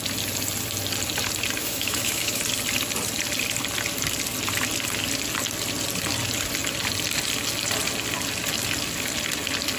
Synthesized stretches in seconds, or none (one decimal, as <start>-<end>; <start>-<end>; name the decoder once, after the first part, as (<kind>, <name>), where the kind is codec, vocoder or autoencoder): 1.6-2.4 (autoencoder, DAC-VAE)